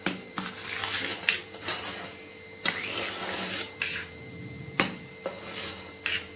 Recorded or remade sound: recorded